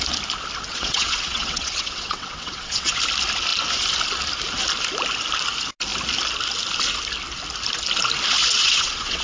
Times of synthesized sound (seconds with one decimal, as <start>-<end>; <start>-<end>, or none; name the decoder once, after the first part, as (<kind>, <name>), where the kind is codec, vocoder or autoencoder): 0.7-3.0 (vocoder, WaveNeXt); 8.5-9.2